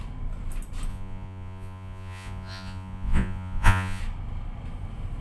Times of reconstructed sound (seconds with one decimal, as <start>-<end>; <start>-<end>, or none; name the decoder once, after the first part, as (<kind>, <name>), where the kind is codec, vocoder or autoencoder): 0.9-4.0 (vocoder, Vocos)